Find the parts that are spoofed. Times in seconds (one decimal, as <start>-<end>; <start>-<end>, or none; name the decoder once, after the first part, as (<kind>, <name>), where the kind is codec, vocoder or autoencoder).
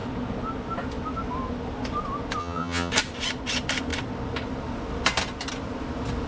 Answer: 2.4-2.9 (vocoder, HiFi-GAN)